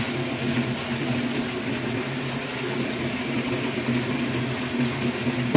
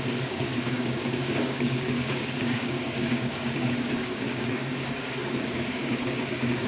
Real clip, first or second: first